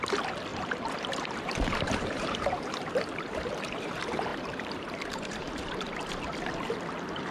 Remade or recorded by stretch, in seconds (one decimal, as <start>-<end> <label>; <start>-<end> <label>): 0.0-0.5 recorded; 0.5-3.0 remade; 3.0-4.3 recorded; 4.3-5.7 remade; 5.7-7.3 recorded